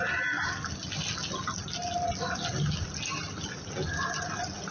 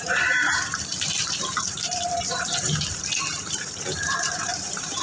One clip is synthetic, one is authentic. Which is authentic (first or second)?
first